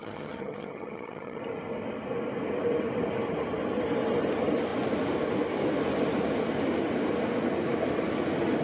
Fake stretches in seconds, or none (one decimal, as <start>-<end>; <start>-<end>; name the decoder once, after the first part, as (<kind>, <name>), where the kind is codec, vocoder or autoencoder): 0.0-1.4 (vocoder, HiFi-GAN)